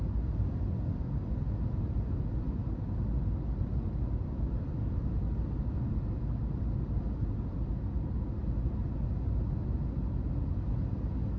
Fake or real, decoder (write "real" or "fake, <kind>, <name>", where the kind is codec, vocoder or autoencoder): real